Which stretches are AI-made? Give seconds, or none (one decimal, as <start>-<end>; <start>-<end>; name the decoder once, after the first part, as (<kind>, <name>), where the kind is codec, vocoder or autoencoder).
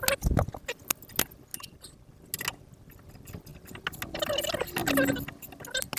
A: none